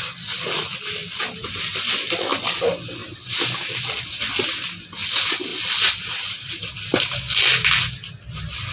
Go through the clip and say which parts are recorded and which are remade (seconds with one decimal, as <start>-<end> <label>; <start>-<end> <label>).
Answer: 0.0-3.0 recorded; 3.0-4.2 remade; 4.2-5.5 recorded; 5.5-6.7 remade; 6.7-8.7 recorded